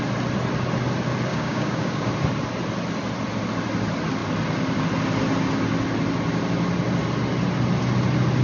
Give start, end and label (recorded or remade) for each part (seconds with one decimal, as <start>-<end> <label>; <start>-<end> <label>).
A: 0.0-1.3 recorded; 1.3-2.1 remade; 2.1-8.4 recorded